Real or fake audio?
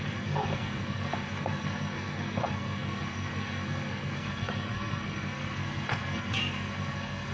fake